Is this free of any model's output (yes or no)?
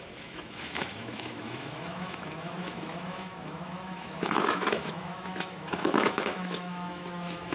no